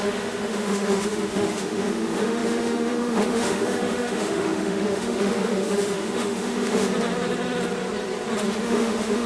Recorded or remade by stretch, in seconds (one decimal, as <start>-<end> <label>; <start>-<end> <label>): 0.0-6.9 remade; 6.9-8.4 recorded; 8.4-9.3 remade